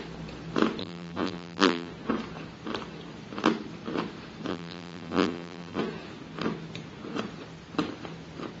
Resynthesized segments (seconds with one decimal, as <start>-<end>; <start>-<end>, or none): 0.8-1.9; 4.5-5.8